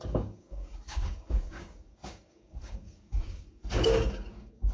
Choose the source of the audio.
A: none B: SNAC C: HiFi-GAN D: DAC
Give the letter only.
D